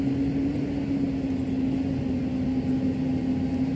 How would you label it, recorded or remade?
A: recorded